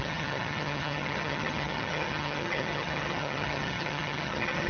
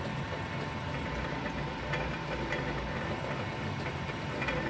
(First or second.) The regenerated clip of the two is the first